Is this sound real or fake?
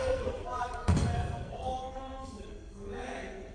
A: fake